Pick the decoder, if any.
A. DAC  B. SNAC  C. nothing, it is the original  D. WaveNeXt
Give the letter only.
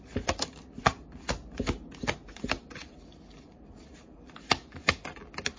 C